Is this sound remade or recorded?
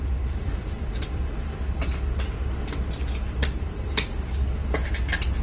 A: recorded